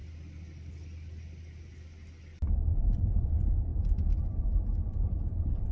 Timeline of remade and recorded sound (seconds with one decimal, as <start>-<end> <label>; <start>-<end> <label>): 0.0-5.7 recorded